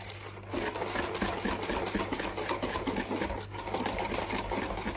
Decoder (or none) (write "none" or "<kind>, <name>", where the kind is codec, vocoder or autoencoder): none